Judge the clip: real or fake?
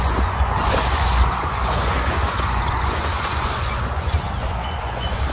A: fake